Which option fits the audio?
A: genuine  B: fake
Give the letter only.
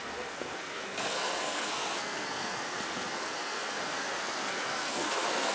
B